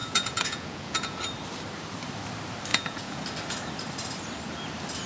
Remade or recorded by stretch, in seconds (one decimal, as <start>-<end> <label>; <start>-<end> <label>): 0.0-1.2 remade; 1.2-2.7 recorded; 2.7-3.2 remade; 3.2-5.1 recorded